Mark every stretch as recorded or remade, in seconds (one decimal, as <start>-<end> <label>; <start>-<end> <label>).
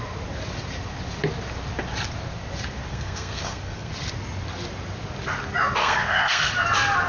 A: 0.0-2.9 recorded; 2.9-3.9 remade; 3.9-5.8 recorded; 5.8-6.5 remade; 6.5-7.1 recorded